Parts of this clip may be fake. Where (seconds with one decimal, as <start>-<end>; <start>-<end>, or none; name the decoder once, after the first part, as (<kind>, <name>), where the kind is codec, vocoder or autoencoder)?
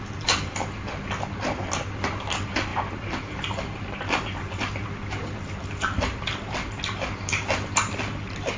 none